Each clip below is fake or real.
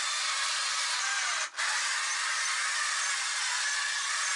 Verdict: real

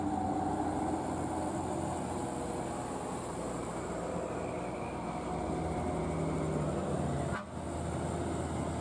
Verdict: real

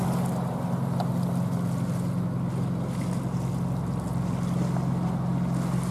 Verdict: real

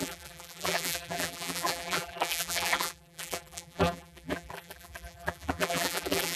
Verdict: fake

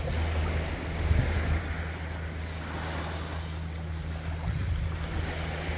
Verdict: real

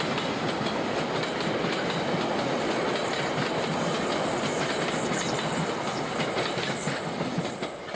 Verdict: real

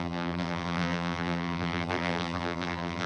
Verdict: fake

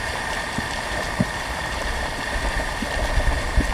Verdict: fake